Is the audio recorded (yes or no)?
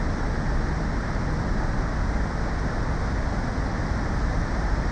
yes